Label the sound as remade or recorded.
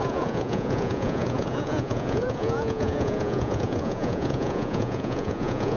remade